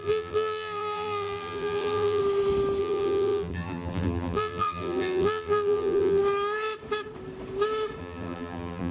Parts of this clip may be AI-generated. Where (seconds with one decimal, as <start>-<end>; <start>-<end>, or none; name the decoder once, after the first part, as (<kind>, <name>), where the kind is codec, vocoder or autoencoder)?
0.0-2.2 (vocoder, BigVGAN v2); 2.8-6.2; 8.0-8.9